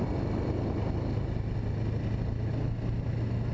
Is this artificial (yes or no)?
no